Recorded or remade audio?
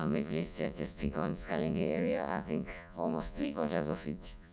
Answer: remade